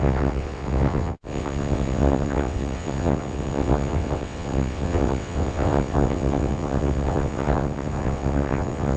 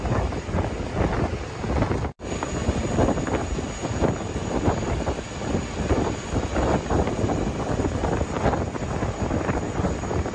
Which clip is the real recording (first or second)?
second